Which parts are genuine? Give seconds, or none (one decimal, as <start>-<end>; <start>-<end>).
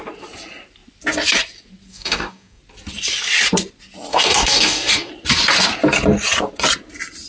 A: 0.0-1.9; 2.6-4.1; 5.1-7.3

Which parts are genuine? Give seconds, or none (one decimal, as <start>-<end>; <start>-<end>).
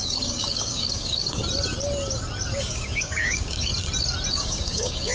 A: 1.4-2.6; 3.7-4.3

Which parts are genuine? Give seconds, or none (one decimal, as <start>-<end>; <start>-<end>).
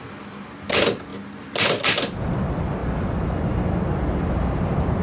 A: 0.0-5.0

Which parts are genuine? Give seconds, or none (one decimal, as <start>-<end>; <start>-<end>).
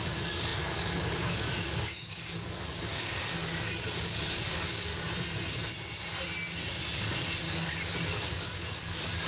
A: 4.9-7.4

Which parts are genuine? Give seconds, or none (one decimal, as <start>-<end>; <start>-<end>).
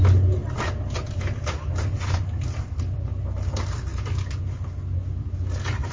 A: 0.0-5.9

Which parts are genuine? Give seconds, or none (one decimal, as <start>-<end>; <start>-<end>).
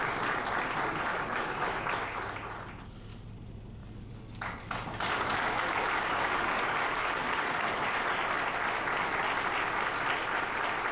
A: 0.0-1.1; 1.8-3.8; 8.1-10.9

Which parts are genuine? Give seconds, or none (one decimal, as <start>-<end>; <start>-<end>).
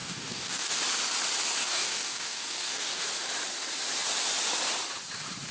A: 0.7-1.6; 3.0-5.5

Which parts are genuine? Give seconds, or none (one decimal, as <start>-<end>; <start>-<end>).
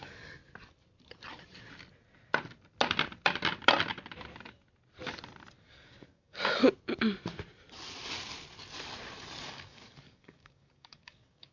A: 0.4-5.6; 6.6-9.4